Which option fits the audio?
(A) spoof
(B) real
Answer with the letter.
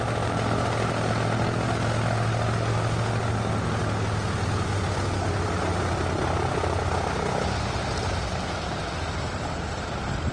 B